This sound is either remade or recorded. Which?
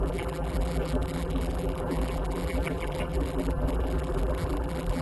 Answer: remade